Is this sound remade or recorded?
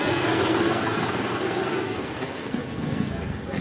remade